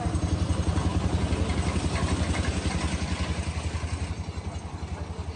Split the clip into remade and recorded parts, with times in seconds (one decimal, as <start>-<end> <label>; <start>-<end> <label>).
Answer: 0.0-5.4 recorded